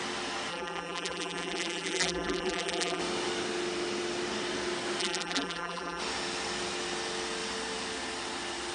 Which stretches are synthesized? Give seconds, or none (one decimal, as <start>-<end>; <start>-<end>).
0.5-3.0; 5.0-6.0